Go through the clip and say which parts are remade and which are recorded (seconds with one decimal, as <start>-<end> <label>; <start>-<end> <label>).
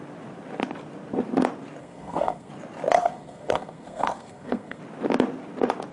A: 0.0-1.8 recorded; 1.8-2.5 remade; 2.5-3.0 recorded; 3.0-4.8 remade; 4.8-5.9 recorded